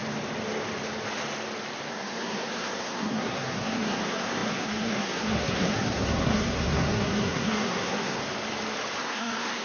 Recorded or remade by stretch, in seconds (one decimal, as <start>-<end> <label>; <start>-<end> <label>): 0.0-1.9 recorded; 1.9-8.2 remade; 8.2-9.0 recorded; 9.0-9.6 remade